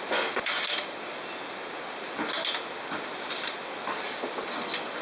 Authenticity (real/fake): real